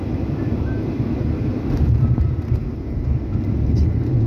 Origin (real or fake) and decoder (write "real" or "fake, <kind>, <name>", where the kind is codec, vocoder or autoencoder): real